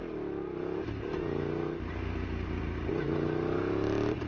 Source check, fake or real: real